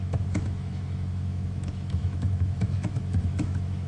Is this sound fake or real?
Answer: fake